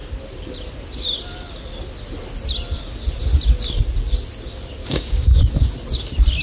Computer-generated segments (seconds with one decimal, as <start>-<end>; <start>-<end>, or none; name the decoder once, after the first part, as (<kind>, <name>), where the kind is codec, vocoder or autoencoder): 4.8-5.4 (codec, DAC)